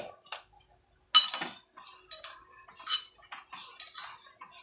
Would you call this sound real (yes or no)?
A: yes